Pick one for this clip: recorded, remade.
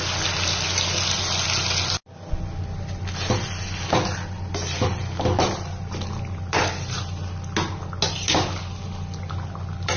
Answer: recorded